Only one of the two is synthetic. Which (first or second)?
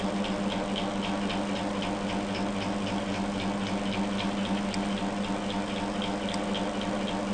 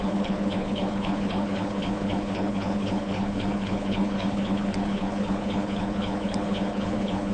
second